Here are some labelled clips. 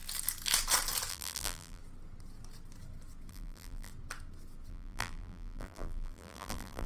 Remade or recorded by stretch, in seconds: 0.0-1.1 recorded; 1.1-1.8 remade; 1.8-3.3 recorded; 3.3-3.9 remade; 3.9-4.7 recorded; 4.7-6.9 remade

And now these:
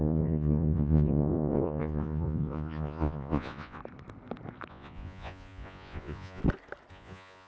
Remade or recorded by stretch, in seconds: 0.0-3.8 remade; 3.8-4.7 recorded; 4.7-6.4 remade; 6.4-6.9 recorded; 6.9-7.5 remade

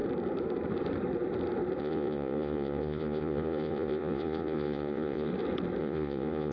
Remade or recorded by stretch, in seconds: 0.0-1.8 recorded; 1.8-5.3 remade; 5.3-5.8 recorded; 5.8-6.5 remade